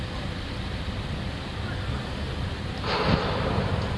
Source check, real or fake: real